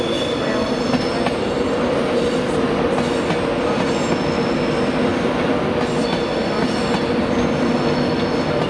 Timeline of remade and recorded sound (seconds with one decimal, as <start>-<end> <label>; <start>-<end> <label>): 0.0-8.7 recorded